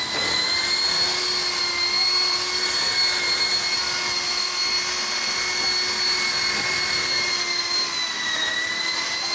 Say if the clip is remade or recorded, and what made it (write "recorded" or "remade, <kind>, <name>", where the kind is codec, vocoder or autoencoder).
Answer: recorded